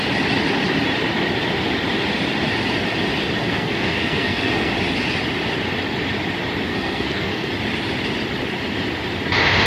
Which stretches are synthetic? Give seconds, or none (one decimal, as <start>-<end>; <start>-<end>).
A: 3.4-4.7; 6.7-7.5